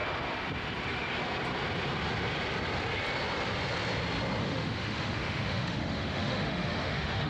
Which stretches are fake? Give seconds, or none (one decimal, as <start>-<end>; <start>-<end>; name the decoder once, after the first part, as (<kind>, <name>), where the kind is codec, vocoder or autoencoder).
4.4-7.3 (autoencoder, DAC-VAE)